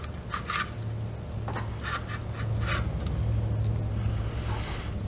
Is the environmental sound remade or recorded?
recorded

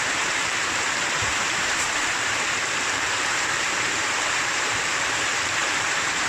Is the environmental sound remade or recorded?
remade